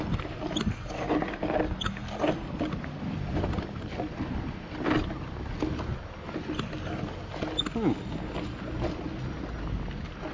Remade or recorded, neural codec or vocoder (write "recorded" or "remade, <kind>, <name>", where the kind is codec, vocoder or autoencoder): recorded